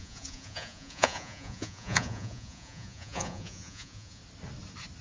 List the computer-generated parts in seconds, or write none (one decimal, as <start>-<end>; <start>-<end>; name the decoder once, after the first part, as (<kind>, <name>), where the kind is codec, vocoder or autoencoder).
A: 0.0-4.2 (vocoder, Vocos)